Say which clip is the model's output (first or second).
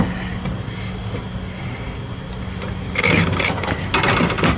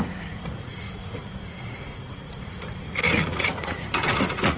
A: second